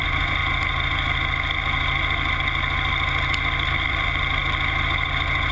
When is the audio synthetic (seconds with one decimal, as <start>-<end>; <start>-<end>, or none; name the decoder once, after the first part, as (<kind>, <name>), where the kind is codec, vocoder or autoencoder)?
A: 0.0-0.4 (vocoder, BigVGAN v2); 3.7-4.4

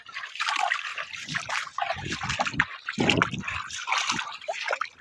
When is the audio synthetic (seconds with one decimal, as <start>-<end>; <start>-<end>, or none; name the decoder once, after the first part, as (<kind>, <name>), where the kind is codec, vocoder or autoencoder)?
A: 0.0-0.9 (vocoder, BigVGAN v2); 1.5-5.0

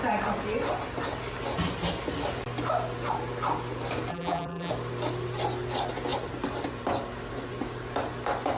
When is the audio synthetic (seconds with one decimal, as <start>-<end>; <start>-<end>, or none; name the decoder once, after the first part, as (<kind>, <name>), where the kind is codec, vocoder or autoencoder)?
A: 4.1-4.7 (vocoder, BigVGAN v2)

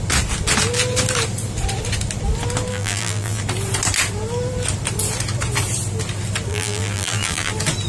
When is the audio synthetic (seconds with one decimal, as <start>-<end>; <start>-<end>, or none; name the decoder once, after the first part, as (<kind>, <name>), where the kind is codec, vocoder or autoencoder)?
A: 2.7-3.4 (vocoder, BigVGAN v2); 6.5-7.5

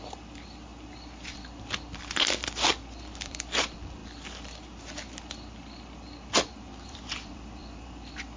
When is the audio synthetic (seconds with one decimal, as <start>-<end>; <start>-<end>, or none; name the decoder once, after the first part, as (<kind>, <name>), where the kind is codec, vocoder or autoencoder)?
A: 0.0-0.7 (vocoder, BigVGAN v2); 2.0-4.0; 6.9-8.4

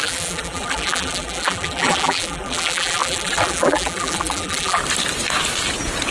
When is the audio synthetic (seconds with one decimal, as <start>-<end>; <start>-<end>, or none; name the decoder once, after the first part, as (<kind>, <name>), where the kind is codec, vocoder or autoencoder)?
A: 0.0-4.8 (vocoder, BigVGAN v2)

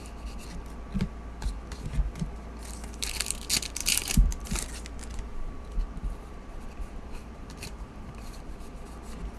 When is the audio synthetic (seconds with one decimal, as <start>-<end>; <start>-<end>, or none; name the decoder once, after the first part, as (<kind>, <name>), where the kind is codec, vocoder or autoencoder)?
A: 3.8-4.4 (vocoder, BigVGAN v2); 5.3-8.8

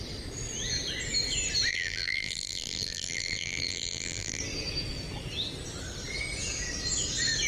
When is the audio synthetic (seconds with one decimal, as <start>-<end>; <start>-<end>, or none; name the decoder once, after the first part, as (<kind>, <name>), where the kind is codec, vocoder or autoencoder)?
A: 1.7-4.4 (vocoder, BigVGAN v2)